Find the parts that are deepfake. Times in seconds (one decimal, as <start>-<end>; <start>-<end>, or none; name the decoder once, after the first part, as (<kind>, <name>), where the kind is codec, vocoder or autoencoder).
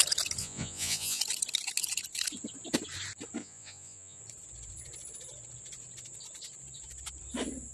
0.4-1.2 (vocoder, Vocos); 3.4-4.2